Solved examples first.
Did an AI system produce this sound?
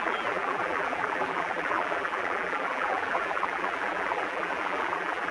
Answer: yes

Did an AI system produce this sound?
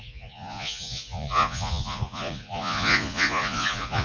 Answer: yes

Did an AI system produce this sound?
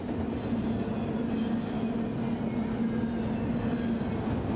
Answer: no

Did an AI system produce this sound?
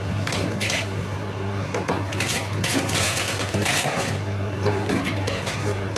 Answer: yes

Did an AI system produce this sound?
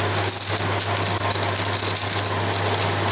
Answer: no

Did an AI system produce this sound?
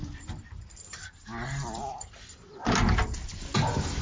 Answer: no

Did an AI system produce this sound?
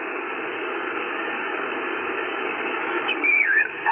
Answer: yes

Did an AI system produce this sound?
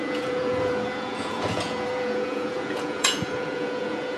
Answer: yes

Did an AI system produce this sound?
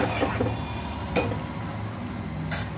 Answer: no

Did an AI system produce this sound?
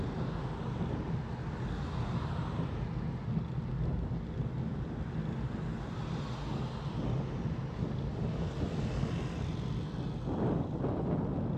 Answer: no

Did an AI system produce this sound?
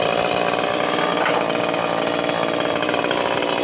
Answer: no